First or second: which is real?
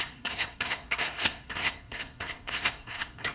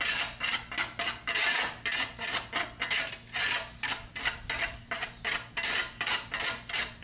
second